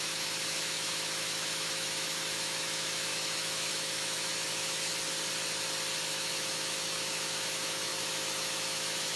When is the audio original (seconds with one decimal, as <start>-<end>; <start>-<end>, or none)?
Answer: 4.9-6.1